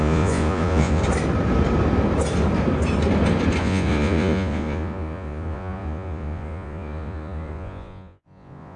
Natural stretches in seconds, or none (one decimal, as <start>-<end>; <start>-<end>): 1.0-3.6